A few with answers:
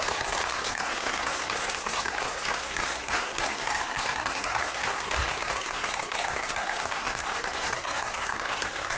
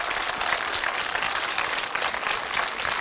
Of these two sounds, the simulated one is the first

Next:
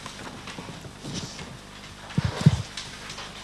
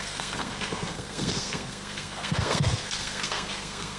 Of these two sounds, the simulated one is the second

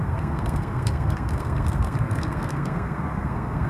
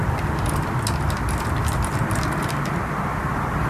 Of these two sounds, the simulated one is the first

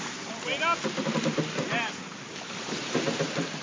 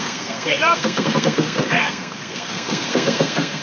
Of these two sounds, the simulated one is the second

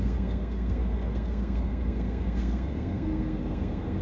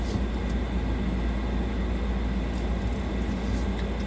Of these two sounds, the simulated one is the first